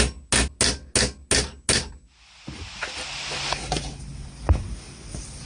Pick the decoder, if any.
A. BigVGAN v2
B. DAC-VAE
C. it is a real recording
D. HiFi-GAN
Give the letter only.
C